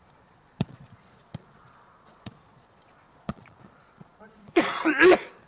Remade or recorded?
remade